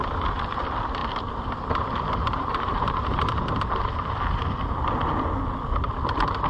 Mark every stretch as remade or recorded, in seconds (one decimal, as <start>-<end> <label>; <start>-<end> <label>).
0.0-1.0 recorded; 1.0-4.4 remade; 4.4-6.5 recorded